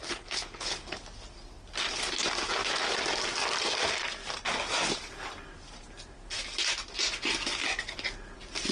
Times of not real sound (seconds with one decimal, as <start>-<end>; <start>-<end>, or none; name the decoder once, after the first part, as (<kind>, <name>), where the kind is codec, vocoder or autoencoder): 0.0-1.0 (codec, HILCodec)